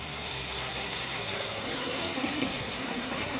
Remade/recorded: remade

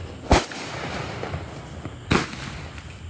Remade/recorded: recorded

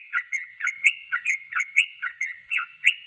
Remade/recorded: remade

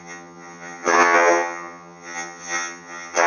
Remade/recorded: remade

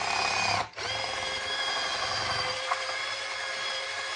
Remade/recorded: recorded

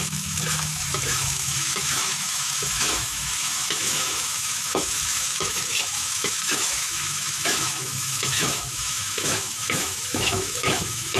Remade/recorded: remade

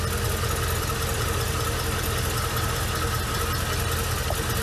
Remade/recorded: recorded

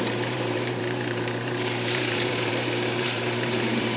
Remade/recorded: remade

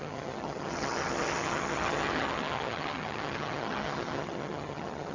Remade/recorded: remade